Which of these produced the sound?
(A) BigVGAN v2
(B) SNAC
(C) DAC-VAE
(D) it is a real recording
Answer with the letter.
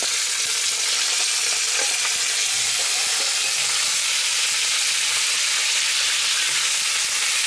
D